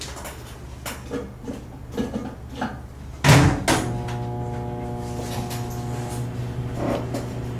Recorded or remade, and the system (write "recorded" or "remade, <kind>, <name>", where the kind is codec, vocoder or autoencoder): recorded